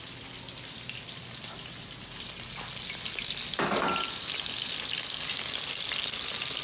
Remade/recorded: recorded